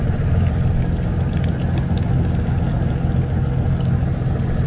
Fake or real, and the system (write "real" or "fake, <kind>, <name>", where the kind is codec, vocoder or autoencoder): real